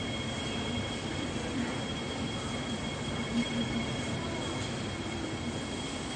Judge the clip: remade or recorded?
recorded